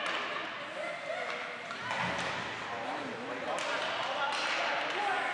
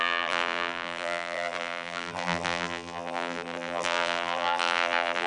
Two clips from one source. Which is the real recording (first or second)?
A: first